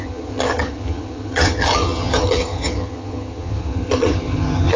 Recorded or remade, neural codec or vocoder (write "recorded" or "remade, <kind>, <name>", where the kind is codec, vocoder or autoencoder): remade, vocoder, HiFi-GAN